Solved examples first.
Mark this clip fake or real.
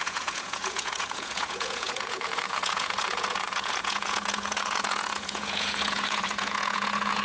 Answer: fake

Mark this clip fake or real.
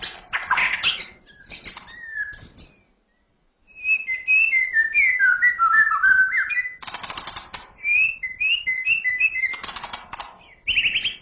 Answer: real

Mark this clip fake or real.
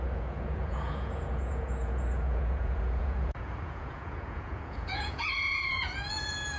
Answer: fake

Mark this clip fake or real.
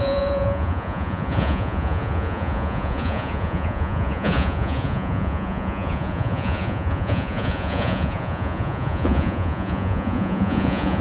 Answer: fake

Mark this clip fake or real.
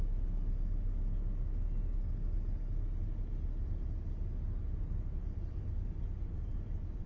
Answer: real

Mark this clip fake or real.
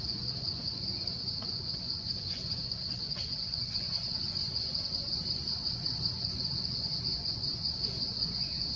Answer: fake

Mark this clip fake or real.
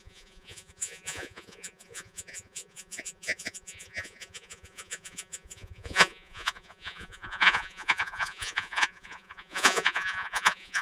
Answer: fake